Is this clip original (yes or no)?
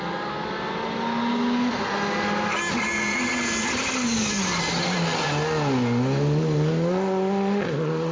yes